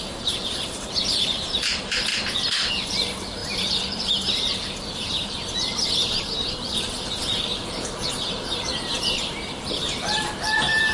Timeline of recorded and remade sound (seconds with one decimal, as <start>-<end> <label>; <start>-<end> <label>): 0.0-2.1 remade; 2.1-2.7 recorded; 2.7-10.9 remade